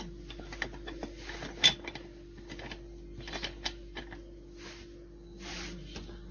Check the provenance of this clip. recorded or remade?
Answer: recorded